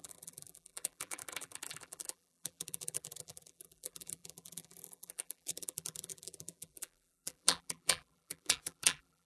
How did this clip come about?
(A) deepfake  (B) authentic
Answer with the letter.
A